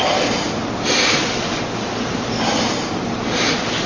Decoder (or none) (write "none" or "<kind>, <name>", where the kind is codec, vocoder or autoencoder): vocoder, BigVGAN v2